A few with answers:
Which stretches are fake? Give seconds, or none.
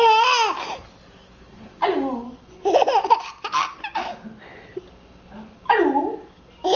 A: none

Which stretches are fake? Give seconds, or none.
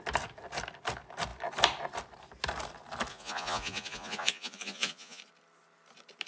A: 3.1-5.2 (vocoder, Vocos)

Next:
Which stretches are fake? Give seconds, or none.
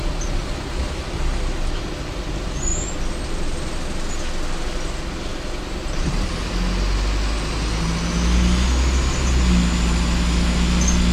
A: 5.3-6.4 (vocoder, BigVGAN v2)